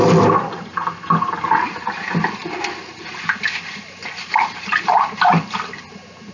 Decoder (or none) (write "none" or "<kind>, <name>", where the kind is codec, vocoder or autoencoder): none